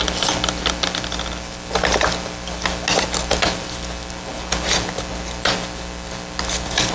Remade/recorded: recorded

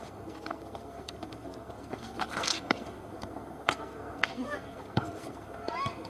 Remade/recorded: remade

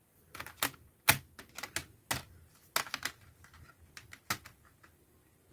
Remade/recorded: recorded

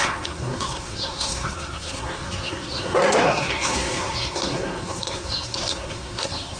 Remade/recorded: remade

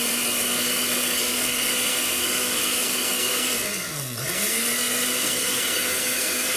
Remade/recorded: remade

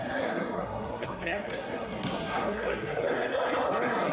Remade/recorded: remade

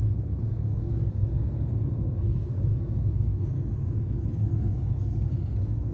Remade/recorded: remade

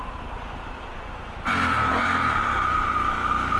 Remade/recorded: recorded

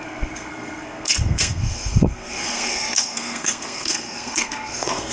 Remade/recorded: remade